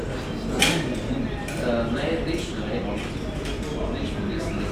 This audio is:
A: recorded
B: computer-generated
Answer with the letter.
A